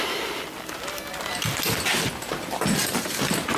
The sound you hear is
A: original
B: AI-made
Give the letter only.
A